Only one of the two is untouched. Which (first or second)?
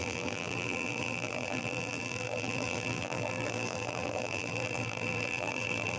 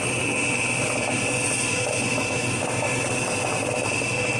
second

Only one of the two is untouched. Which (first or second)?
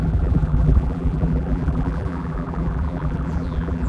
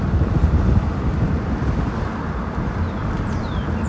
second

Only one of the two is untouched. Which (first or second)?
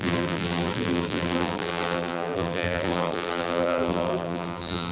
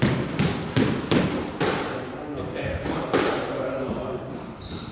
second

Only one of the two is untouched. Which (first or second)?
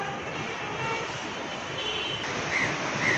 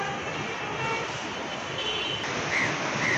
second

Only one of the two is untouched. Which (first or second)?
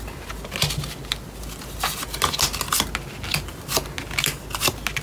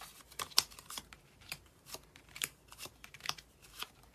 first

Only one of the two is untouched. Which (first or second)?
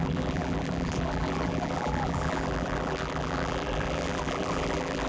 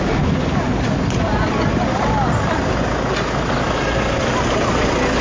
second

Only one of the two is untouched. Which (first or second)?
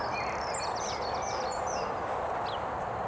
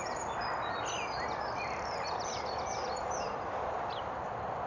first